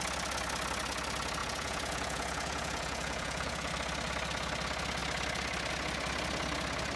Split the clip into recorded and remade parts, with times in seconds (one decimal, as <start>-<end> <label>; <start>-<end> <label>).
0.0-1.4 recorded; 1.4-3.7 remade; 3.7-7.0 recorded